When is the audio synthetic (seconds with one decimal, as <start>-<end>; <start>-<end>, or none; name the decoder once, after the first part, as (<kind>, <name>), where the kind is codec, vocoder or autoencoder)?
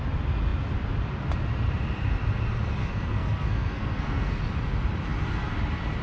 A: 2.8-4.4 (codec, SNAC)